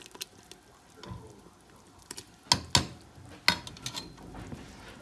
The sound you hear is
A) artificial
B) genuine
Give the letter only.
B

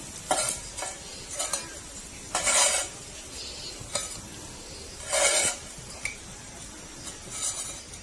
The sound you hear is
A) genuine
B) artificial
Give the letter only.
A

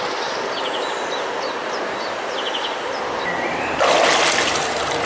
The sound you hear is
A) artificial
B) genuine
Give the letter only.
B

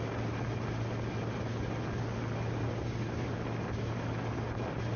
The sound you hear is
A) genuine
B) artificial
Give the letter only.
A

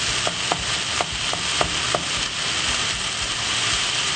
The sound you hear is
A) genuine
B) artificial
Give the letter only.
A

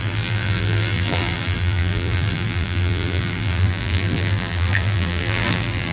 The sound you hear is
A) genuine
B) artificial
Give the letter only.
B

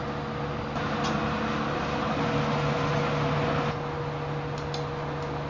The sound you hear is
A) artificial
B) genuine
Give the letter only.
B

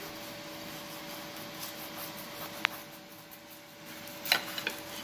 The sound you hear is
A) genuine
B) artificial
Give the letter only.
A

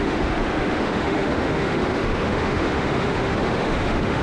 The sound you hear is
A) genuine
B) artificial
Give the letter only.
B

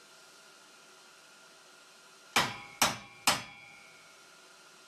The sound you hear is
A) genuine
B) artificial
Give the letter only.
A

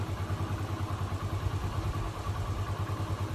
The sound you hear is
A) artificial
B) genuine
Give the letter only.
B